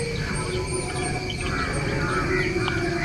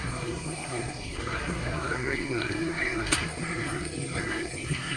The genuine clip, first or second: first